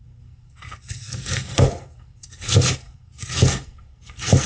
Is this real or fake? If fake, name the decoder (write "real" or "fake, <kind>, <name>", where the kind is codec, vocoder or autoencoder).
fake, codec, SNAC